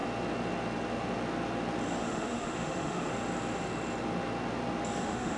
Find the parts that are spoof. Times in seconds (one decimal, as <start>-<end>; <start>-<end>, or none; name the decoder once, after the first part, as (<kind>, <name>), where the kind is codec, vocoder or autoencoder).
2.0-3.1 (autoencoder, DAC-VAE); 5.0-5.4